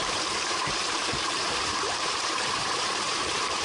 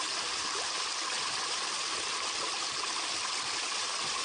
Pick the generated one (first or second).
first